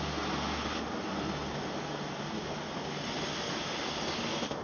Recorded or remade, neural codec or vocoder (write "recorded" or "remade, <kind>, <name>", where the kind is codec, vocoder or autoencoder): recorded